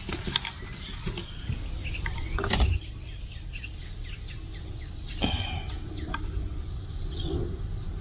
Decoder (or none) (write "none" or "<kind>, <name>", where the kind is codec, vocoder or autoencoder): none